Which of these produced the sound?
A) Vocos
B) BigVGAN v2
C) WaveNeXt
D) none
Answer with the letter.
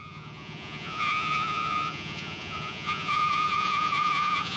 A